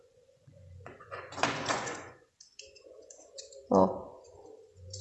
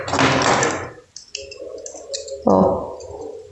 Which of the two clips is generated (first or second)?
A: first